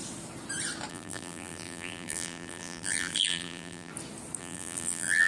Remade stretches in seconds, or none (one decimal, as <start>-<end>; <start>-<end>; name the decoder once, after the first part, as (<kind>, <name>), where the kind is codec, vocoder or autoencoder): 0.9-3.9 (vocoder, BigVGAN v2); 4.4-5.3